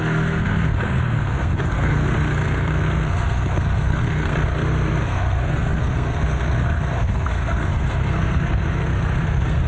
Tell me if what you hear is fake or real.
fake